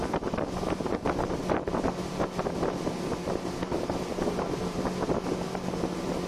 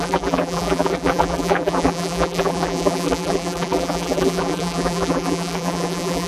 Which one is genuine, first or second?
first